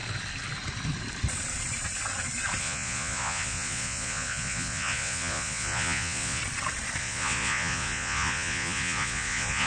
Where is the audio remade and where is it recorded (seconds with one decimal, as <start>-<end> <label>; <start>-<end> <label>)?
0.0-2.6 recorded; 2.6-6.4 remade; 6.4-7.0 recorded; 7.0-9.7 remade

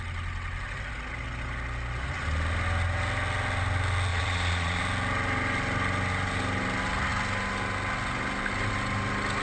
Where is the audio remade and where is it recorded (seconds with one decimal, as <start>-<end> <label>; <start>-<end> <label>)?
0.0-4.1 recorded; 4.1-4.8 remade; 4.8-9.4 recorded

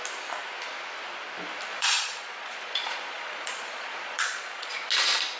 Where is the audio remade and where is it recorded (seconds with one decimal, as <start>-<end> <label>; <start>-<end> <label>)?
0.0-1.7 recorded; 1.7-4.9 remade; 4.9-5.4 recorded

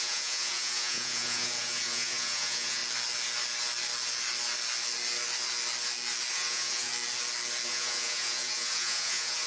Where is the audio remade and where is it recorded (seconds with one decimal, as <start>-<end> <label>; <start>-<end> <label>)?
0.0-2.8 remade; 2.8-6.3 recorded; 6.3-6.9 remade; 6.9-7.7 recorded; 7.7-9.5 remade

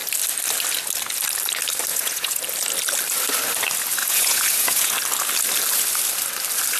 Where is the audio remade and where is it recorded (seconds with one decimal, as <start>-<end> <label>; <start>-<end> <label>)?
0.0-1.9 recorded; 1.9-2.4 remade; 2.4-4.0 recorded; 4.0-4.9 remade; 4.9-6.8 recorded

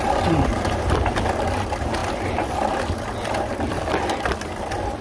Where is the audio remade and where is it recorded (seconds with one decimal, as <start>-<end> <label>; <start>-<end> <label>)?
0.0-5.0 recorded